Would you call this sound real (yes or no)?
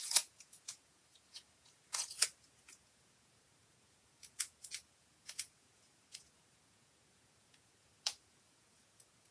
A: no